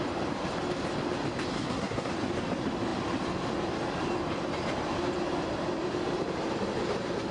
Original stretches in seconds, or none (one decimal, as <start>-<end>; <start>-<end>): 0.0-1.5; 2.1-7.3